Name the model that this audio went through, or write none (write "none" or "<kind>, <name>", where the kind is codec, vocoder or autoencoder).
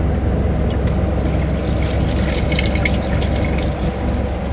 none